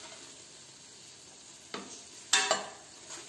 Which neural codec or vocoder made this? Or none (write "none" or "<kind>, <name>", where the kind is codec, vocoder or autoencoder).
none